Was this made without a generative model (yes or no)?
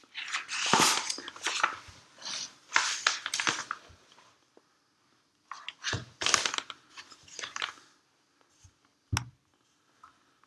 yes